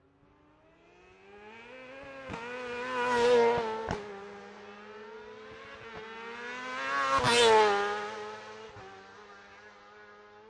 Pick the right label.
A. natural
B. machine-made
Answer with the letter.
A